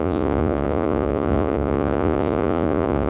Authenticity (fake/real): fake